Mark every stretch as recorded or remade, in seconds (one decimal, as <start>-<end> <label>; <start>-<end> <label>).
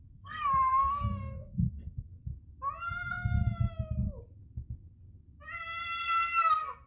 0.0-2.3 remade; 2.3-6.0 recorded; 6.0-6.9 remade